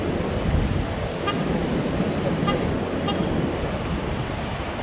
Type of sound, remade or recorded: recorded